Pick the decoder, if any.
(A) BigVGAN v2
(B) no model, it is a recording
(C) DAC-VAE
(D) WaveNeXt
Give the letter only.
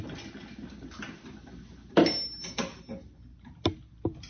B